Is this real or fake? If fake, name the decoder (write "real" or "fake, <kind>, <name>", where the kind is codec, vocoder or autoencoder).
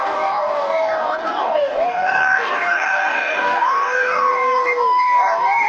fake, codec, DAC